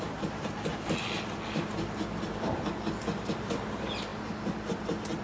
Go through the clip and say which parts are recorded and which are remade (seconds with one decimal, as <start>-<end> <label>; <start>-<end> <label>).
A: 0.0-0.7 recorded; 0.7-3.5 remade; 3.5-5.2 recorded